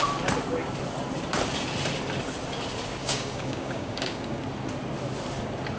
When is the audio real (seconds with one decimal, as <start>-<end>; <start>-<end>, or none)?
0.0-3.0; 4.4-5.8